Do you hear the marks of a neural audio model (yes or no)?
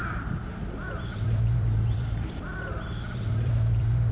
yes